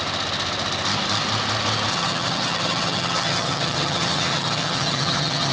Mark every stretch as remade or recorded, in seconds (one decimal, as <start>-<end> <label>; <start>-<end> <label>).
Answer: 0.0-1.9 recorded; 1.9-5.5 remade